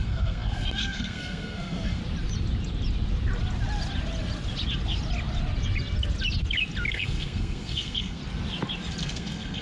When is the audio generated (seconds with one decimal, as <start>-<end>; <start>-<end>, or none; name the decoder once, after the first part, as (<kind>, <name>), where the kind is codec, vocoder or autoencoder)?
0.0-2.0 (codec, SNAC); 6.9-8.2; 9.0-9.6